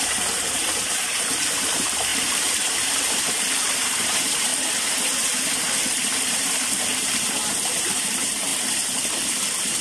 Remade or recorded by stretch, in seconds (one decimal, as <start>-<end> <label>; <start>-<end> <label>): 0.0-4.5 remade; 4.5-5.0 recorded; 5.0-9.8 remade